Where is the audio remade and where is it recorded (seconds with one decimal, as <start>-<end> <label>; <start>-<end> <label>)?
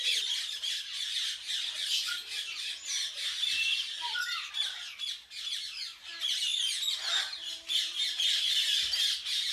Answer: 0.0-9.5 recorded